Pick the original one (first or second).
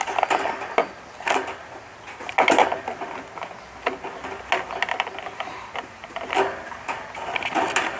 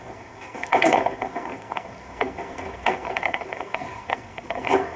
first